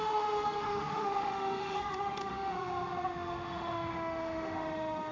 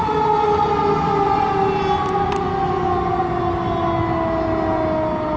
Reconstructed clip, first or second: first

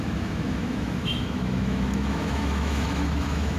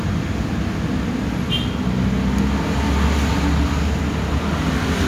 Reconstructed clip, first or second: first